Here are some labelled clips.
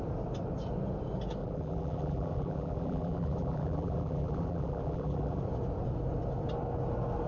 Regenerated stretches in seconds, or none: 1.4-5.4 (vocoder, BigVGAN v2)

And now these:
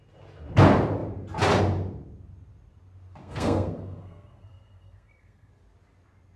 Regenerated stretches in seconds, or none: 3.2-5.5 (codec, SNAC)